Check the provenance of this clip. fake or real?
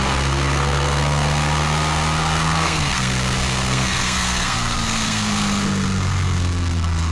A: fake